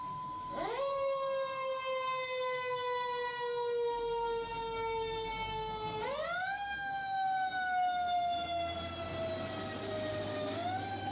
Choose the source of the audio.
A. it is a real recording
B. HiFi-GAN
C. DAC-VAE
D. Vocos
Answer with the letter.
A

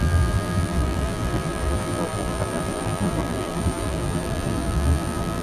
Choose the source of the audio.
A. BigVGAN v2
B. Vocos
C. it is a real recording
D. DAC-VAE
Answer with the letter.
A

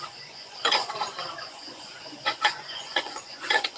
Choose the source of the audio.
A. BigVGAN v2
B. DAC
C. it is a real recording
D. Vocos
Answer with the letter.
D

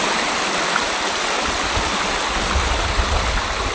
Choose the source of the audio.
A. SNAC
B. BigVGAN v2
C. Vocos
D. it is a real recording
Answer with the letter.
D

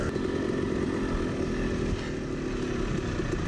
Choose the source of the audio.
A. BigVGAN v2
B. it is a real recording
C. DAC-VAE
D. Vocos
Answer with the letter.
B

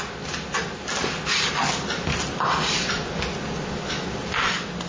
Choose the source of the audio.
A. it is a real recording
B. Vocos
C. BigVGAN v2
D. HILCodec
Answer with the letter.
A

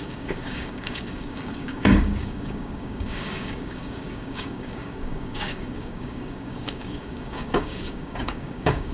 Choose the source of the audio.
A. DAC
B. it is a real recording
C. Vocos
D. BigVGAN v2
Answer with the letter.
A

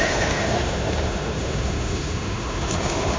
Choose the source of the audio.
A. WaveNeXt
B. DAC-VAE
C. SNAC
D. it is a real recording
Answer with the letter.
B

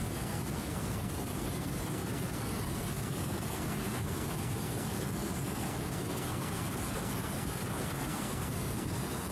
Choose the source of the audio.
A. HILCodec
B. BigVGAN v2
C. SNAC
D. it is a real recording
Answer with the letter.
C